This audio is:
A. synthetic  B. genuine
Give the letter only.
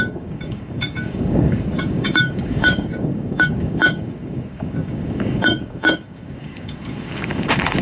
A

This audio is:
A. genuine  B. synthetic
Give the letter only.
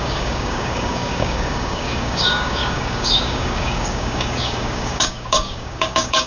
B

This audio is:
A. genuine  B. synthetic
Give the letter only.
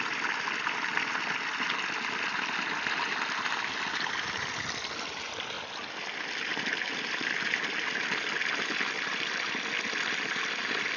A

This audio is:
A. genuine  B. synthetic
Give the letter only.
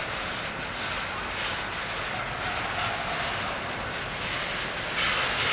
A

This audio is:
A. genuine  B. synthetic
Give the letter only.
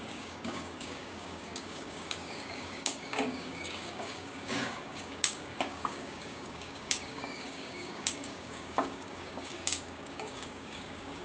B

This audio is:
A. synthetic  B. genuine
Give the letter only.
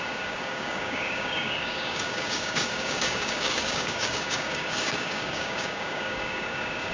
A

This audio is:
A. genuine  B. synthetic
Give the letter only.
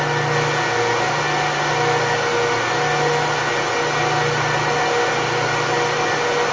A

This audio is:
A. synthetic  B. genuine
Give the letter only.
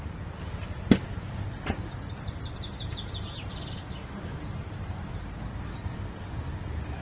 B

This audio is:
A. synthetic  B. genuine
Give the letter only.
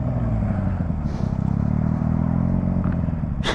B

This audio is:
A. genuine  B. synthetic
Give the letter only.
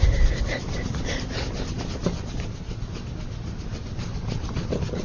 A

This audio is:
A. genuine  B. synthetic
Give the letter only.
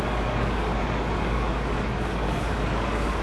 B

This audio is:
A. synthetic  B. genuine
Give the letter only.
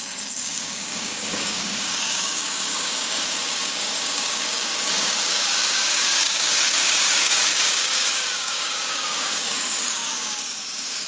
A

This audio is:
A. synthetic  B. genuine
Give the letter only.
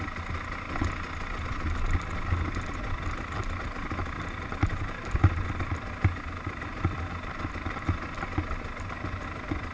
B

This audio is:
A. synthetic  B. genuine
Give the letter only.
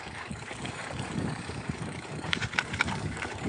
A